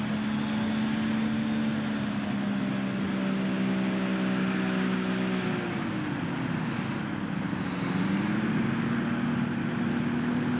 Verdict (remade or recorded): recorded